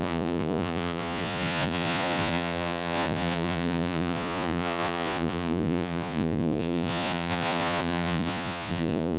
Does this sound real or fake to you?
fake